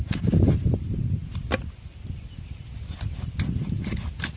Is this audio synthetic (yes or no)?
no